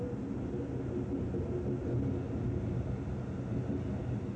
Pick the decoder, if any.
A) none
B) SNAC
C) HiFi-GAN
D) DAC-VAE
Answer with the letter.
A